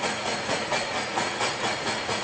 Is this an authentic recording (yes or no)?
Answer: no